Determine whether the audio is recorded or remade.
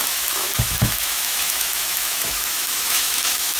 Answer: remade